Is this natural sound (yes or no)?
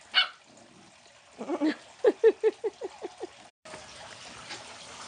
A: yes